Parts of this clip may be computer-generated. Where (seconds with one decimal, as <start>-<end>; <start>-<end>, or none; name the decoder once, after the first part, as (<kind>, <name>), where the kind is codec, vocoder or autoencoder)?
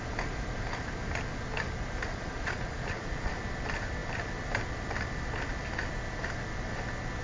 2.1-3.3 (vocoder, Vocos)